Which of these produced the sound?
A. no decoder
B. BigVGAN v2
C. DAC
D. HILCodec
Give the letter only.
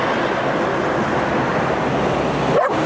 A